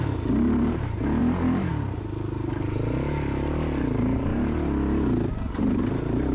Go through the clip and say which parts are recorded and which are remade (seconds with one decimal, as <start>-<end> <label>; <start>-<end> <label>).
0.0-6.3 recorded